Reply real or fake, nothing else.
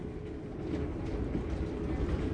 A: real